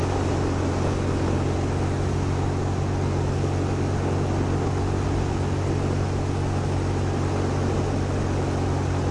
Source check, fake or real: real